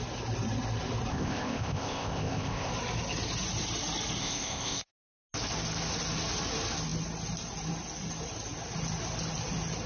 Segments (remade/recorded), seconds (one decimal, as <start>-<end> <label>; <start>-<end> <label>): 0.0-1.1 recorded; 1.1-2.7 remade; 2.7-4.2 recorded; 4.2-4.9 remade; 4.9-9.9 recorded